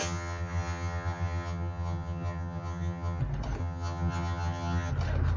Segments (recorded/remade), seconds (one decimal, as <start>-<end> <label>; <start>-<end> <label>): 0.0-3.2 remade; 3.2-3.6 recorded; 3.6-4.9 remade; 4.9-5.4 recorded